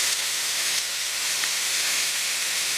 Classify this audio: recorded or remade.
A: remade